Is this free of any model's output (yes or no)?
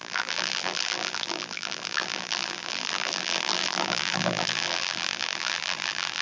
no